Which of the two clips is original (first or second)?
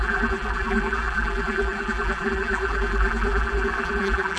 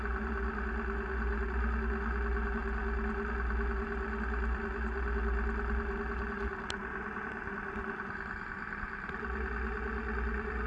second